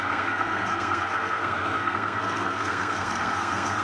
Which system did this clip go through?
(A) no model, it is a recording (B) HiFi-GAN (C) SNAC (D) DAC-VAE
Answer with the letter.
C